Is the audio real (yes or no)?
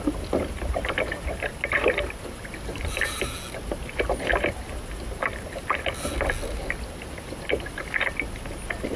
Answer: yes